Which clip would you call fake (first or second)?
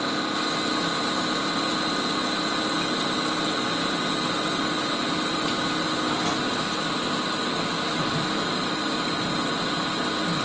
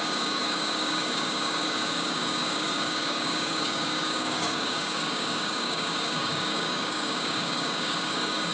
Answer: second